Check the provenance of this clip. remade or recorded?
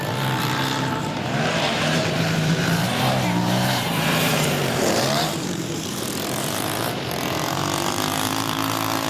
remade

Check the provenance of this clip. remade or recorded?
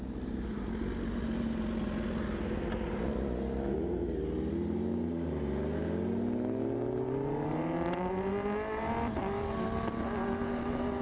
recorded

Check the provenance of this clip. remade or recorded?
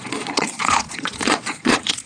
remade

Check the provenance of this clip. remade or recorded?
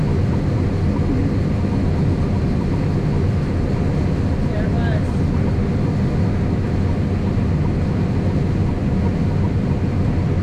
recorded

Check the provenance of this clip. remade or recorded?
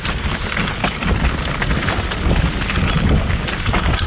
recorded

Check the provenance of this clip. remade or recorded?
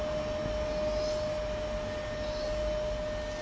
recorded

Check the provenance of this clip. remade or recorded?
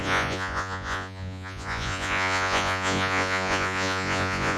remade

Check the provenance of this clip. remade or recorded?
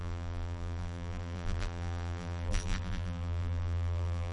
remade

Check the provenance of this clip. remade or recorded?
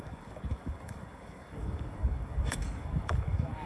remade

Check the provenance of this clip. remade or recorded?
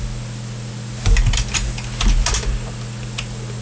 recorded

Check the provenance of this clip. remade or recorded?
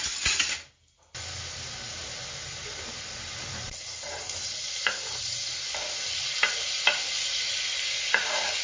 recorded